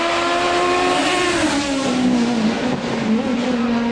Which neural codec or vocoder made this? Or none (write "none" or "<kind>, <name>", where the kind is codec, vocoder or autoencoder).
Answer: none